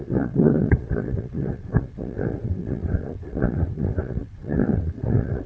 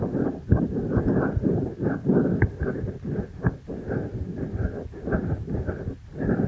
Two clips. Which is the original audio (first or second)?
second